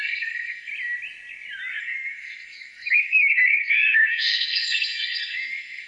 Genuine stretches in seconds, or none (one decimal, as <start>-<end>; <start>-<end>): 0.7-1.8